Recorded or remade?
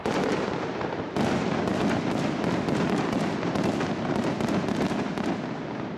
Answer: recorded